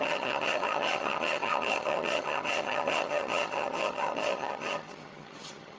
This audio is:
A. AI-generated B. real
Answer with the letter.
A